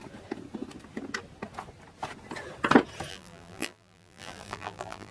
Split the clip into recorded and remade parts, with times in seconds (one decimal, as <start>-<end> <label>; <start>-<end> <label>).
0.0-3.1 recorded; 3.1-5.1 remade